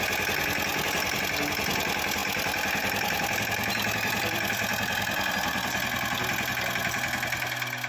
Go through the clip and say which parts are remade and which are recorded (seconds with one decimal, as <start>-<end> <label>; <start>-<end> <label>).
0.0-0.7 recorded; 0.7-1.2 remade; 1.2-2.2 recorded; 2.2-5.3 remade; 5.3-7.9 recorded